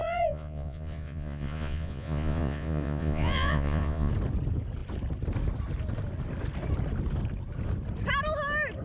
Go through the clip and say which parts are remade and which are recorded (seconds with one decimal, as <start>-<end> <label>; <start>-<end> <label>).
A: 0.0-4.1 remade; 4.1-8.8 recorded